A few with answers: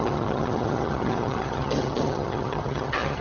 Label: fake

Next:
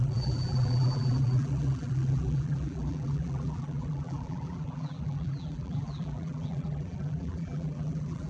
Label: fake